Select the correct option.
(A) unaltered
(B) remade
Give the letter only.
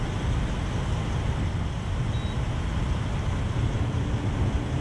A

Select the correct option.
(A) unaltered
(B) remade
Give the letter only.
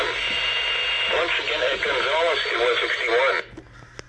A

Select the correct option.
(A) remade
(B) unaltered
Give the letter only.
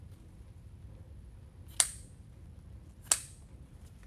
B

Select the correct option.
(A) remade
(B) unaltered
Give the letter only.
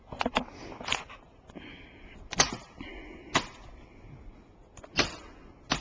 B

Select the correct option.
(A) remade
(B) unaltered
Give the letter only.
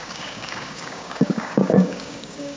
A